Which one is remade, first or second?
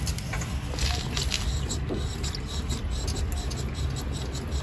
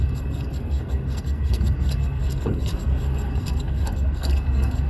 second